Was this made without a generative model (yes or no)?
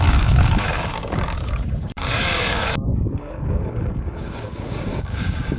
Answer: no